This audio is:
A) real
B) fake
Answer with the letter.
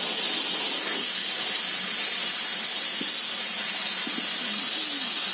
A